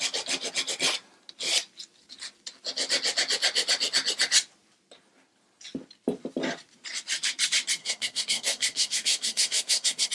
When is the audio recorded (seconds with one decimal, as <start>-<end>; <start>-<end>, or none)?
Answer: 0.0-7.8